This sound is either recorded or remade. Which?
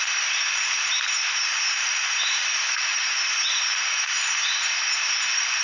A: remade